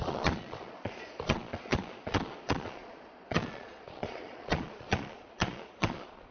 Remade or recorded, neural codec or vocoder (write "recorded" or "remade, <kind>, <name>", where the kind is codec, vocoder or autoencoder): remade, vocoder, Vocos